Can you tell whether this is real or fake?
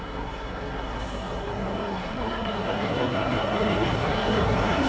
fake